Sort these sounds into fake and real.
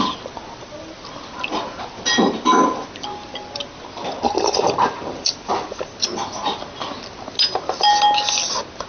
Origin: real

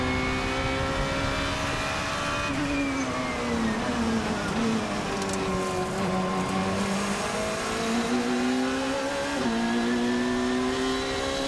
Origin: real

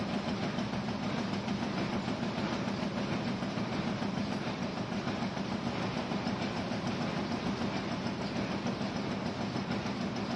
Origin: real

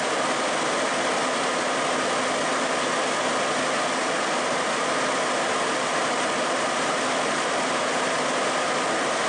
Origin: real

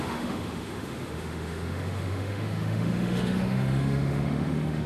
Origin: fake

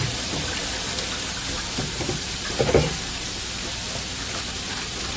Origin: real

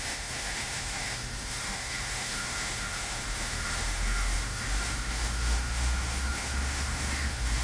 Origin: fake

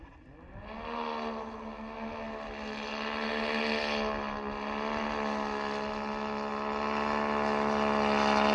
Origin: real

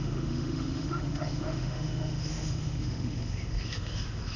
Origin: fake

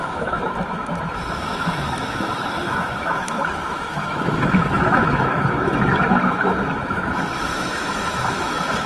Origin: fake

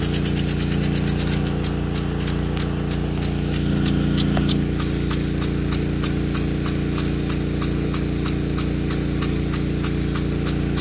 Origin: real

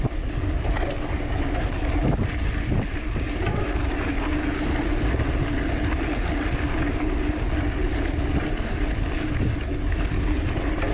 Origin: real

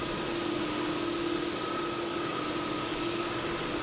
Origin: real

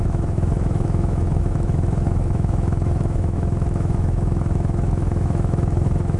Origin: fake